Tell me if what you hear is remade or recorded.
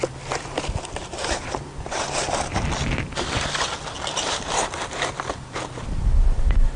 recorded